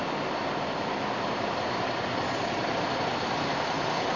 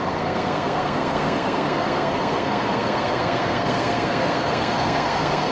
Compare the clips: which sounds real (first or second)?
first